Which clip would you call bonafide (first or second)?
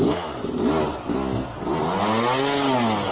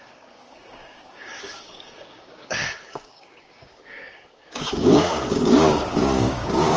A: first